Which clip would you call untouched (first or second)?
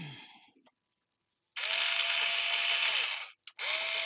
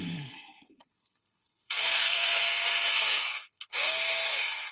first